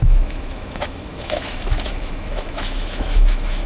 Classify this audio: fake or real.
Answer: fake